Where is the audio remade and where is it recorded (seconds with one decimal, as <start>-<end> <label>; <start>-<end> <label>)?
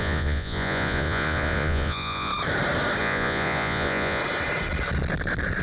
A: 0.0-2.3 remade; 2.3-3.0 recorded; 3.0-4.2 remade; 4.2-5.6 recorded